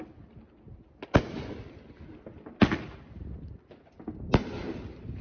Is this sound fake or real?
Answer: real